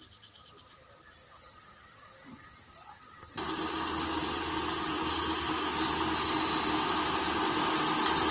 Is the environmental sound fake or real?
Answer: real